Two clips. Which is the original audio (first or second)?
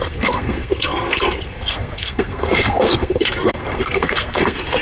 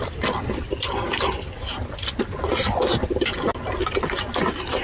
second